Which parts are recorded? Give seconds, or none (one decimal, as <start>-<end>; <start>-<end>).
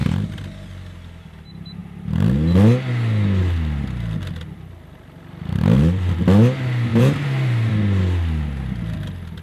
0.0-6.9; 7.7-9.4